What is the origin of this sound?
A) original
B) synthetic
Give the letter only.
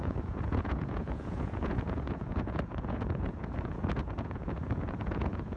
B